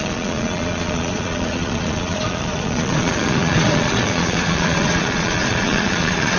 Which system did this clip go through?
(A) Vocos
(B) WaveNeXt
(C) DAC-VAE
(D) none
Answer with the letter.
A